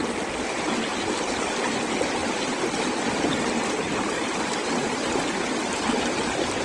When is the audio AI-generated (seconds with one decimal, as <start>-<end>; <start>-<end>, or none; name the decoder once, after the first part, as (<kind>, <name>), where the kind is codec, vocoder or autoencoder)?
none